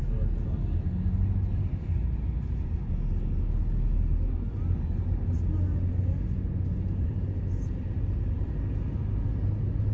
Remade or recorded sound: recorded